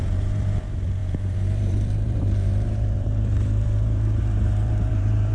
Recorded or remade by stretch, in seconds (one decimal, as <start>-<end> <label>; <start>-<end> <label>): 0.0-5.3 remade